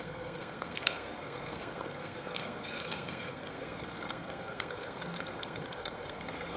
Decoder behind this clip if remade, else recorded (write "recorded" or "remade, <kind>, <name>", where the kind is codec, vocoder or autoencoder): remade, codec, SNAC